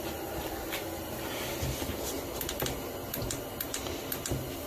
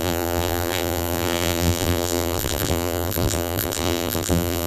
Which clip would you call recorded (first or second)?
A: first